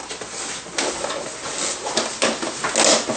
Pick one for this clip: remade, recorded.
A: recorded